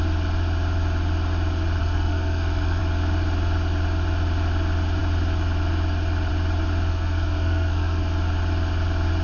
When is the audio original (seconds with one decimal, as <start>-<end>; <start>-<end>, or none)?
0.0-1.8; 2.8-6.9; 8.0-9.2